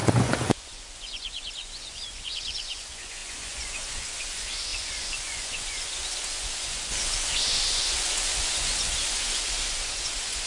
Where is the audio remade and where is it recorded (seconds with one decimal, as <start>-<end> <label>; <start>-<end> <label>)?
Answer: 0.0-10.5 remade